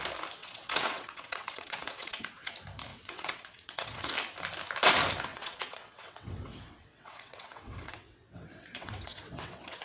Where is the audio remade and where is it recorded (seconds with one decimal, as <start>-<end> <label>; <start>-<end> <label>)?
0.0-0.4 recorded; 0.4-2.5 remade; 2.5-2.9 recorded; 2.9-4.1 remade; 4.1-5.3 recorded; 5.3-9.8 remade